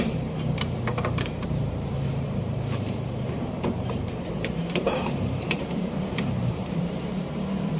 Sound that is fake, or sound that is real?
fake